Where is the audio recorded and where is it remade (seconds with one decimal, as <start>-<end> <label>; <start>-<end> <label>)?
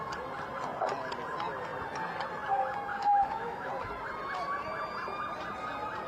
0.0-2.9 recorded; 2.9-3.7 remade; 3.7-6.1 recorded